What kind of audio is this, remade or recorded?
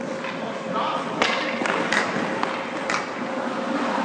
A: recorded